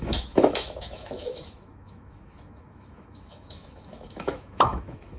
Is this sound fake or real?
fake